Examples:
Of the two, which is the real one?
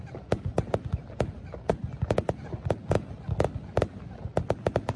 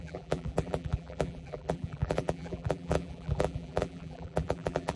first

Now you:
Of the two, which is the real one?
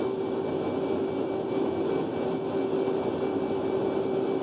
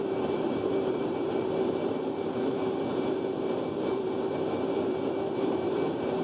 first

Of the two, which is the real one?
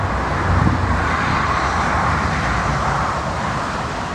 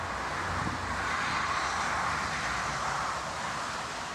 second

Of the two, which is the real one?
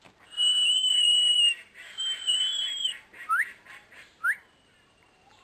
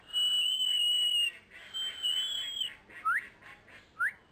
second